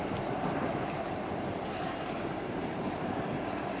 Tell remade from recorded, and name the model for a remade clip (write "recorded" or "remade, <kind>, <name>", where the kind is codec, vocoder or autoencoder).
remade, vocoder, BigVGAN v2